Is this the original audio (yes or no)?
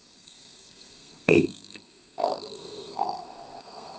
no